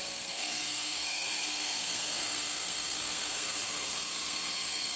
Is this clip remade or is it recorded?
remade